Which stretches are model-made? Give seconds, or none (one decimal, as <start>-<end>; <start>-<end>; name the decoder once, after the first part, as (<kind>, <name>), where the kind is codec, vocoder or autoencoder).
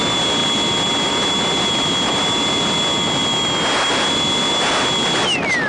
none